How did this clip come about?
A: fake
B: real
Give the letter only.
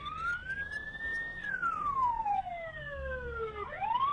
B